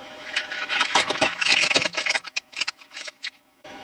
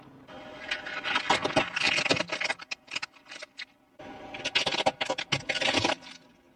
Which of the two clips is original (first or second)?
second